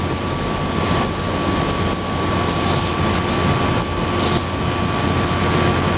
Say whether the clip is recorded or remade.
recorded